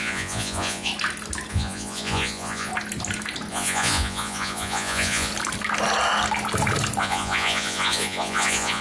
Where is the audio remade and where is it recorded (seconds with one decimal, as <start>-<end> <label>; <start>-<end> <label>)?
0.0-0.9 remade; 0.9-1.5 recorded; 1.5-2.7 remade; 2.7-3.5 recorded; 3.5-5.3 remade; 5.3-7.0 recorded; 7.0-8.8 remade